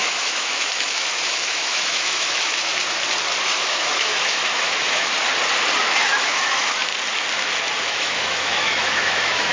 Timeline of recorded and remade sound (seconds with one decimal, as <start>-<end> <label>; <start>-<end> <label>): 0.0-2.7 remade; 2.7-3.5 recorded; 3.5-5.1 remade; 5.1-5.8 recorded; 5.8-6.9 remade; 6.9-7.8 recorded; 7.8-9.5 remade

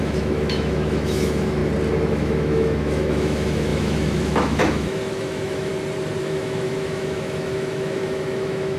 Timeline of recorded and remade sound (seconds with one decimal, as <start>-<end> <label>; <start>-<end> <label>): 0.0-1.6 remade; 1.6-2.1 recorded; 2.1-5.7 remade; 5.7-6.2 recorded; 6.2-8.8 remade

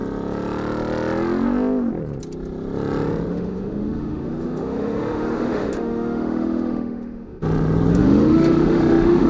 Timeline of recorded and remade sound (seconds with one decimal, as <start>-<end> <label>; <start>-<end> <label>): 0.0-3.3 recorded; 3.3-7.4 remade; 7.4-7.9 recorded; 7.9-9.3 remade

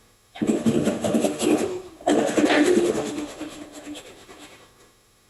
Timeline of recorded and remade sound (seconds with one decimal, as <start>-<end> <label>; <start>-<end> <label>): 0.0-5.3 remade

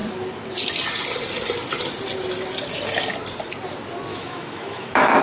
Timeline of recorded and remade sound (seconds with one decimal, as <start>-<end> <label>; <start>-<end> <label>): 0.0-4.1 recorded; 4.1-5.2 remade

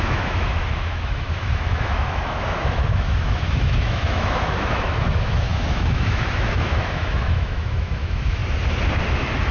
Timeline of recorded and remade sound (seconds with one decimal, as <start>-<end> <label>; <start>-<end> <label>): 0.0-8.4 remade; 8.4-9.5 recorded

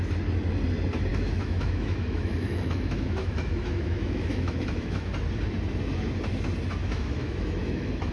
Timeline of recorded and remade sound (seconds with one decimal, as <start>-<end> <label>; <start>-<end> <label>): 0.0-1.1 recorded; 1.1-5.1 remade; 5.1-6.8 recorded; 6.8-8.1 remade